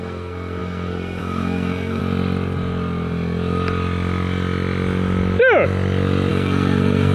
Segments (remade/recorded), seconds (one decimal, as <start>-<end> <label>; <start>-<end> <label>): 0.0-2.0 remade; 2.0-6.3 recorded; 6.3-7.1 remade